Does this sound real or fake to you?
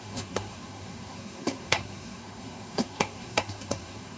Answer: fake